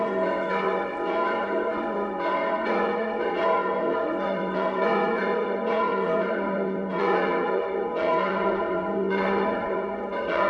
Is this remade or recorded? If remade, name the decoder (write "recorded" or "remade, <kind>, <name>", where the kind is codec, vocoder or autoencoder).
remade, vocoder, WaveNeXt